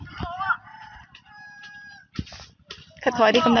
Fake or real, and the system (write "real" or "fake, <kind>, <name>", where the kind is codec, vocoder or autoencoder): real